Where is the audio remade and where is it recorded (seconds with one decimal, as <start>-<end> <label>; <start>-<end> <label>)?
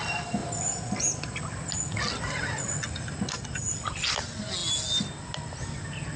0.0-6.2 recorded